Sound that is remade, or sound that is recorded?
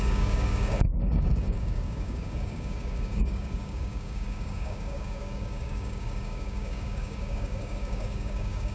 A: remade